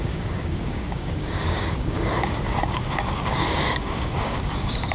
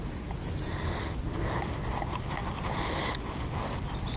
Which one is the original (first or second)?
second